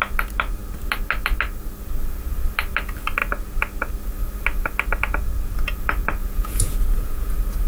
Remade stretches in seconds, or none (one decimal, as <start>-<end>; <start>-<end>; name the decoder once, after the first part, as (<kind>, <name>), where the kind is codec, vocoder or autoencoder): 6.2-7.3 (vocoder, Vocos)